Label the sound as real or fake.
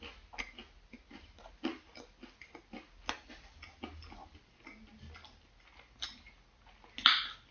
real